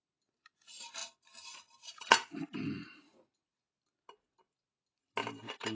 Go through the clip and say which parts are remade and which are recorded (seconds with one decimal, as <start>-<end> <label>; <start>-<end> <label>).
0.0-5.7 recorded